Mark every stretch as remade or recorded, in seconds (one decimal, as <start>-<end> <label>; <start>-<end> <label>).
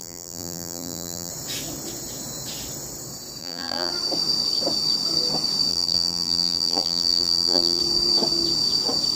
0.0-1.3 remade; 1.3-3.4 recorded; 3.4-3.9 remade; 3.9-5.7 recorded; 5.7-7.8 remade; 7.8-9.2 recorded